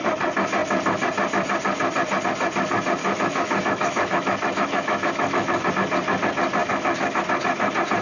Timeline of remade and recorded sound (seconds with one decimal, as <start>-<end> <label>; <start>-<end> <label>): 0.0-3.0 recorded; 3.0-5.7 remade; 5.7-6.6 recorded; 6.6-7.2 remade; 7.2-8.0 recorded